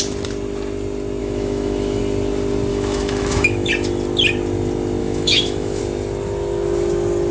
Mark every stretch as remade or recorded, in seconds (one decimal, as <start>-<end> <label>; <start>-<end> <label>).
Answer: 0.0-1.2 recorded; 1.2-2.0 remade; 2.0-2.7 recorded; 2.7-3.7 remade; 3.7-5.0 recorded; 5.0-5.8 remade; 5.8-7.3 recorded